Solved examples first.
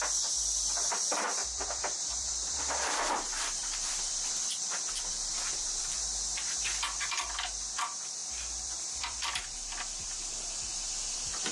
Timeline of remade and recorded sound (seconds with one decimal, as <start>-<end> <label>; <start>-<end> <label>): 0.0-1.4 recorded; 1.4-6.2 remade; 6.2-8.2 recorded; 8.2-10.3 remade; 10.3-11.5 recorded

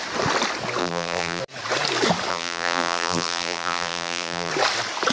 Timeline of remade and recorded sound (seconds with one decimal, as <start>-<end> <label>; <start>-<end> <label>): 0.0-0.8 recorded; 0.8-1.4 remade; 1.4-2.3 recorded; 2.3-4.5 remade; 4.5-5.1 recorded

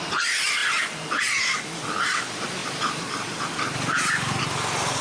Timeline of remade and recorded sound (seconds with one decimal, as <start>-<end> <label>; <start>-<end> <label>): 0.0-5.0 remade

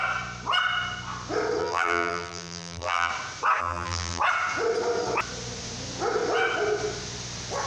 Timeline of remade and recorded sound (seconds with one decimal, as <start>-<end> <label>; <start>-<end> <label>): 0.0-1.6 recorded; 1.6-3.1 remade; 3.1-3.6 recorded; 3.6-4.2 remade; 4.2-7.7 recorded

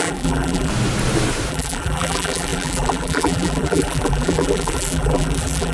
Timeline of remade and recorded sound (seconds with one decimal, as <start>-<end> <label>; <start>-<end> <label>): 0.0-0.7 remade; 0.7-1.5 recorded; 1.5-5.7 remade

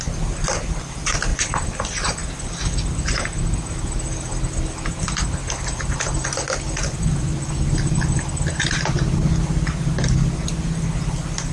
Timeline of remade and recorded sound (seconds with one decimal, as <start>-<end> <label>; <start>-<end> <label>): 0.0-1.3 recorded; 1.3-1.8 remade; 1.8-5.4 recorded; 5.4-9.9 remade; 9.9-11.5 recorded

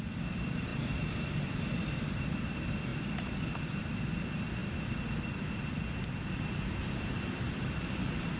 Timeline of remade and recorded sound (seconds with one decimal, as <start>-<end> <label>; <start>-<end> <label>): 0.0-2.9 remade; 2.9-3.8 recorded; 3.8-4.6 remade; 4.6-7.0 recorded; 7.0-8.4 remade